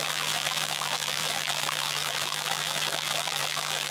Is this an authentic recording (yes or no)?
no